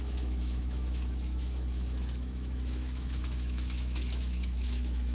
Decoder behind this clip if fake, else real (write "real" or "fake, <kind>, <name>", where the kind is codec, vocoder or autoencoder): fake, autoencoder, DAC-VAE